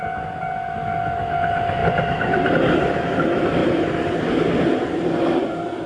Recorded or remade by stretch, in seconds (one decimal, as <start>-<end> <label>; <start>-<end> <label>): 0.0-5.9 recorded